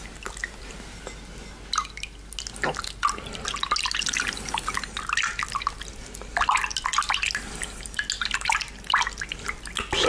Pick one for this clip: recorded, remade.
recorded